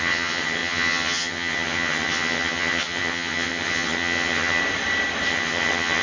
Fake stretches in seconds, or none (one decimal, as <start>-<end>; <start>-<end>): 0.0-4.6; 5.3-6.0